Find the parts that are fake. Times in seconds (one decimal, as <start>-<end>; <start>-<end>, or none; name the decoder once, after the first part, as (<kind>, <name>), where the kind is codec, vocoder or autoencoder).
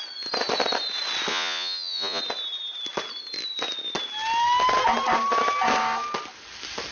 1.3-2.2 (vocoder, Vocos)